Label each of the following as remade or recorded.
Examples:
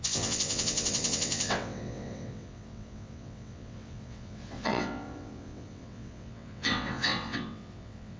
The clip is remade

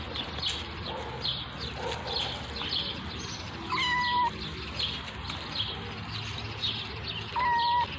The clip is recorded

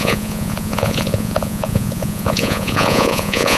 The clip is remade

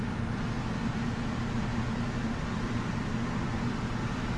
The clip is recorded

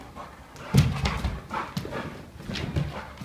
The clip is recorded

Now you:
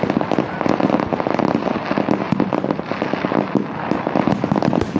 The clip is recorded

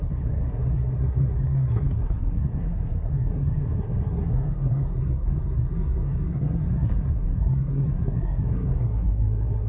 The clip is remade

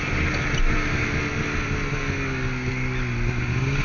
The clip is recorded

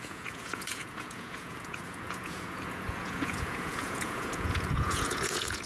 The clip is remade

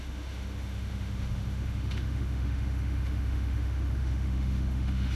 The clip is remade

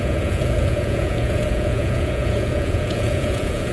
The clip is remade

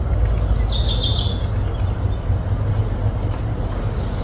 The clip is recorded